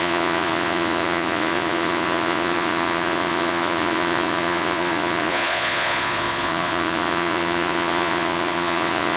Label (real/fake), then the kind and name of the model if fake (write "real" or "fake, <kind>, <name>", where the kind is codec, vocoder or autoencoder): fake, vocoder, Vocos